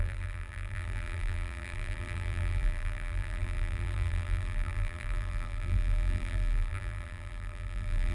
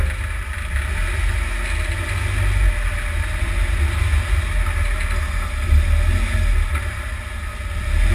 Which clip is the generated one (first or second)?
first